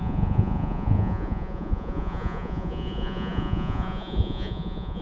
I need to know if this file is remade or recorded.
remade